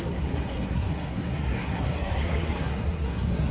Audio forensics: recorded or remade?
remade